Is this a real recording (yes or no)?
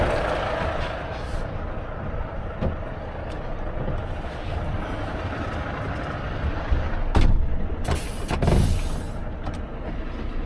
yes